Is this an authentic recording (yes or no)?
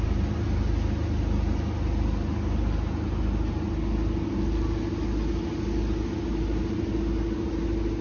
yes